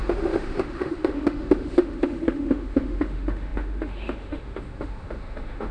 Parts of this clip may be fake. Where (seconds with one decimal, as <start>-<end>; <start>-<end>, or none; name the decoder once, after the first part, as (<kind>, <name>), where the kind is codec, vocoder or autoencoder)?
0.0-5.7 (autoencoder, DAC-VAE)